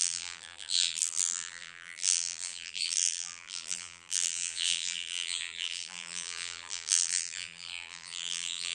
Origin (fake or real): fake